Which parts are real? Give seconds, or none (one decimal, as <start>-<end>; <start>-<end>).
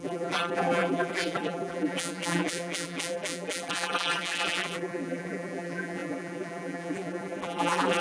none